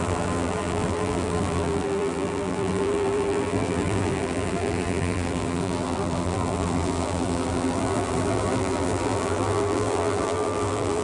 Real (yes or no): no